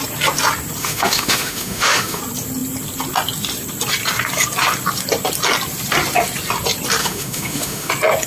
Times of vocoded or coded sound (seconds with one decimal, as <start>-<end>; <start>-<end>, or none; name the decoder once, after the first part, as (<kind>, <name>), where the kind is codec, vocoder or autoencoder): 0.8-2.2 (autoencoder, DAC-VAE); 7.0-7.9